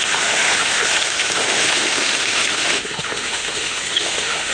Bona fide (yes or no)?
no